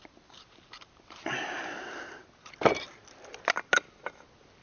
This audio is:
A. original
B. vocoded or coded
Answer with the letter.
A